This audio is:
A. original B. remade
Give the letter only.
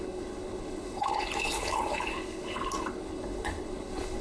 B